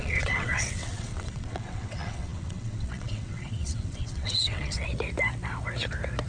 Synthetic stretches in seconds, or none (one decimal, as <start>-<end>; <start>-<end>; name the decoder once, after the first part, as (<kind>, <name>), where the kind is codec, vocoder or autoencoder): 0.0-4.9 (vocoder, WaveNeXt)